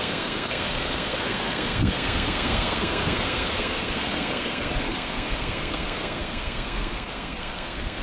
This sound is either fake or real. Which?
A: fake